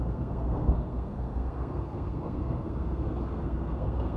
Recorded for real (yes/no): no